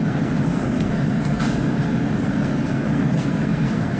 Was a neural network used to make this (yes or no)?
yes